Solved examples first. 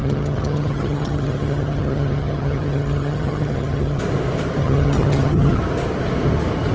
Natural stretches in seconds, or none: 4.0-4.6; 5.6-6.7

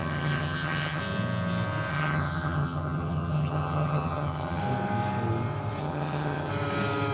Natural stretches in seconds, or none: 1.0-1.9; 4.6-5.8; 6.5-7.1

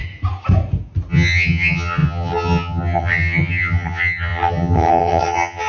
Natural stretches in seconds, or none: 0.0-1.1

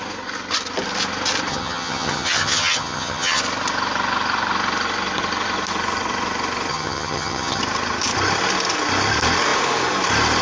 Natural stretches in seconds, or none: 0.0-1.5; 3.4-6.7; 7.6-10.4

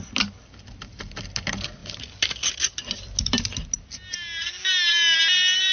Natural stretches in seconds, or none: 0.0-5.7

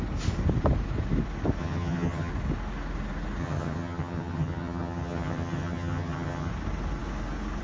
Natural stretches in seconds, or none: 0.0-1.6; 2.3-3.4; 6.5-7.6

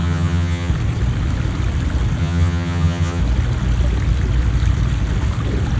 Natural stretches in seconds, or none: 0.7-2.2; 3.2-5.8